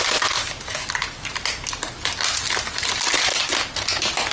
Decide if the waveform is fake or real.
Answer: real